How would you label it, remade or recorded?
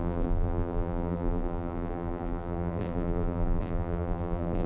remade